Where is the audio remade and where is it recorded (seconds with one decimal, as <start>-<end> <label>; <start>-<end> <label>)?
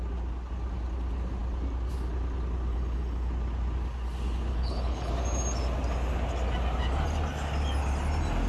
0.0-2.7 recorded; 2.7-3.3 remade; 3.3-4.5 recorded; 4.5-5.1 remade; 5.1-8.5 recorded